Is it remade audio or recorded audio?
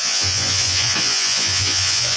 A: remade